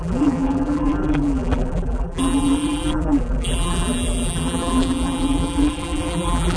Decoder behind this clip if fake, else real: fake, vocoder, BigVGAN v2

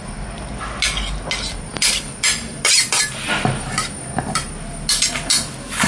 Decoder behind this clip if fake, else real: real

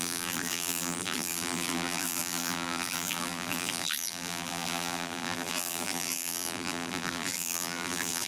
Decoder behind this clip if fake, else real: fake, vocoder, BigVGAN v2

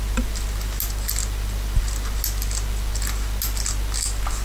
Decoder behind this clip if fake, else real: real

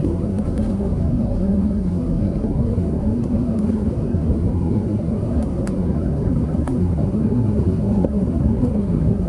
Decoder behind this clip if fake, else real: fake, codec, SNAC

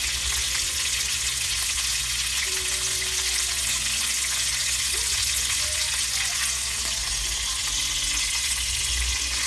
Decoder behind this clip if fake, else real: fake, vocoder, Vocos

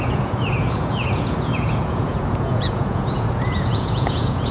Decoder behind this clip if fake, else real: fake, vocoder, Vocos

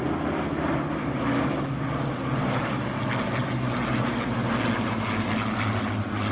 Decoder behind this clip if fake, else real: real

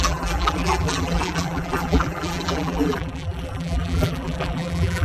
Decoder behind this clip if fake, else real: fake, vocoder, BigVGAN v2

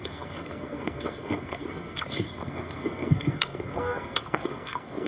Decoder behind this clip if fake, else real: fake, codec, SNAC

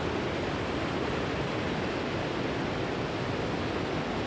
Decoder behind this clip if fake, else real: real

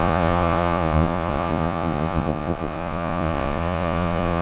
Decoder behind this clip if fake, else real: fake, vocoder, Vocos